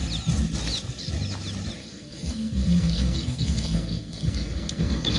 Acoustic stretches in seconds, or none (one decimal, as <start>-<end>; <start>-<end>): 0.0-1.8